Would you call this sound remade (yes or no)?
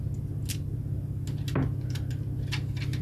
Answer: no